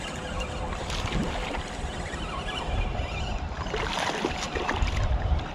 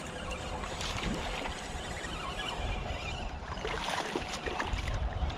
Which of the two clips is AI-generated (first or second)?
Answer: second